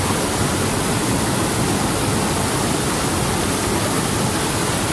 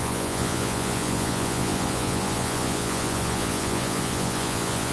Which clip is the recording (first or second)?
first